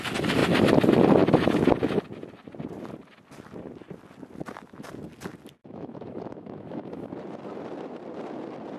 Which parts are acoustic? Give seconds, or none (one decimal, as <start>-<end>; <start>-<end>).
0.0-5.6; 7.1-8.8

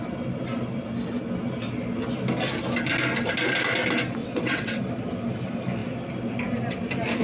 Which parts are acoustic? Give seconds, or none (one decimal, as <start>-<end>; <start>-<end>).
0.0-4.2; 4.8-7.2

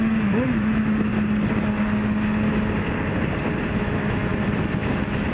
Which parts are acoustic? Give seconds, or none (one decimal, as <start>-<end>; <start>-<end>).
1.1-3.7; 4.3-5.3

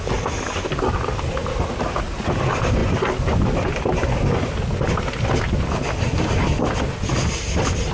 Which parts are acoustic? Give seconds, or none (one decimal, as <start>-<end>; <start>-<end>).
0.0-7.9

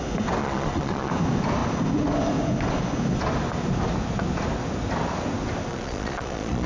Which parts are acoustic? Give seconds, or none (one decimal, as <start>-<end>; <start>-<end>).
0.0-0.4; 1.1-5.7

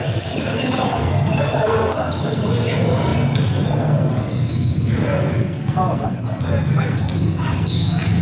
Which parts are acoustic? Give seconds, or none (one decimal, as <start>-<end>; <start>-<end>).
none

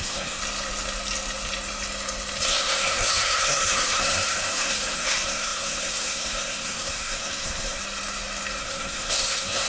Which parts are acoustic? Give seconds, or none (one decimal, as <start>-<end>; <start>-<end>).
0.4-2.5; 7.8-8.6